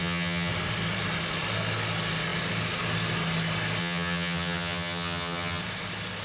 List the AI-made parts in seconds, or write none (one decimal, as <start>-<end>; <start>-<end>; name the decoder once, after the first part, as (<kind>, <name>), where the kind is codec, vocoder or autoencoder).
0.0-0.5 (vocoder, HiFi-GAN); 3.8-5.6